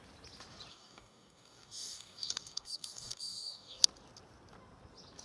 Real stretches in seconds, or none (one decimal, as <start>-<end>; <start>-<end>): 0.0-0.7; 3.8-5.2